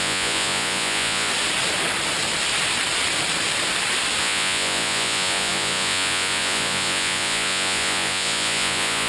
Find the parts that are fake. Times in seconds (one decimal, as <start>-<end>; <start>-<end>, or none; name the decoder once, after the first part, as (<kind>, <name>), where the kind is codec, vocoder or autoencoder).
0.0-1.3 (vocoder, Vocos); 4.2-9.1